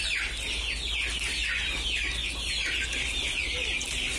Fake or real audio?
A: real